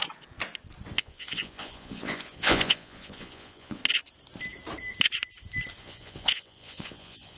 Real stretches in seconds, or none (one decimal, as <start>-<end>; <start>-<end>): 0.0-0.9; 3.8-5.8